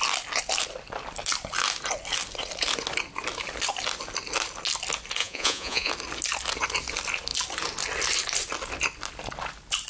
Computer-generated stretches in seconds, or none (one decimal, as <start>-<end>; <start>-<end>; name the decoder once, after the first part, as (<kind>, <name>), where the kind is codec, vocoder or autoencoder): 5.2-5.9 (vocoder, Vocos)